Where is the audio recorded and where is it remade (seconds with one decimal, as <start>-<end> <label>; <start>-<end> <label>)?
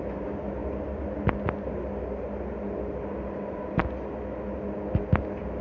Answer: 0.0-0.6 recorded; 0.6-3.0 remade; 3.0-5.6 recorded